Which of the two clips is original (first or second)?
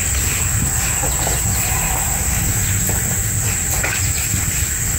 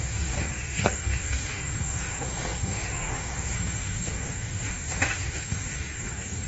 first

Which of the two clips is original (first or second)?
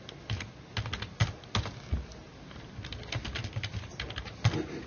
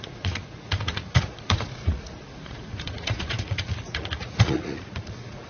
first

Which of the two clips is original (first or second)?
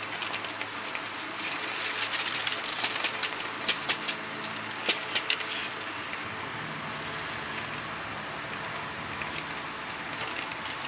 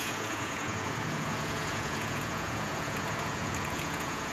first